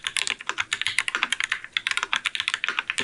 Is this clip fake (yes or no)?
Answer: no